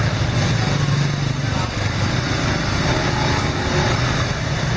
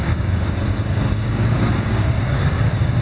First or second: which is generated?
second